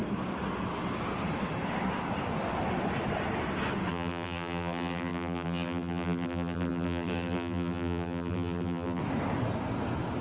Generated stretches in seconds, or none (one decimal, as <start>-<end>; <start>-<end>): 3.9-9.0